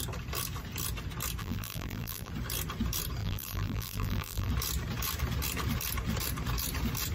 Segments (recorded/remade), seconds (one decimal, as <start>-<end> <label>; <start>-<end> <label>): 0.0-1.4 recorded; 1.4-2.3 remade; 2.3-3.2 recorded; 3.2-4.5 remade; 4.5-7.1 recorded